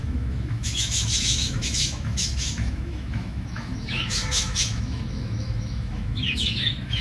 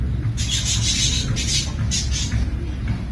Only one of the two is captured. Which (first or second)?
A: second